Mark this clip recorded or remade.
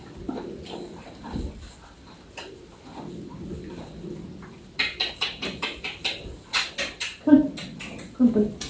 recorded